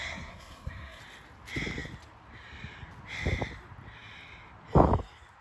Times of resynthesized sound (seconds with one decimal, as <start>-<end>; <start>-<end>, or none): 0.0-1.0

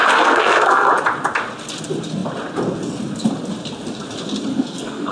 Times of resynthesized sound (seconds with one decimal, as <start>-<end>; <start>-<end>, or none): 0.0-0.9; 4.5-5.1

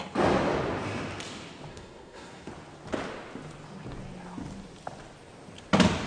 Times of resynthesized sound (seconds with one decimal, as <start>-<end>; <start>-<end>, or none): 1.7-2.5

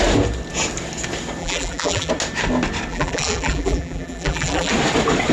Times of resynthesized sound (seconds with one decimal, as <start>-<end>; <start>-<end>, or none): 1.4-2.1; 2.9-4.7